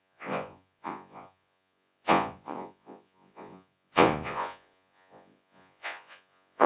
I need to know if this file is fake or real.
fake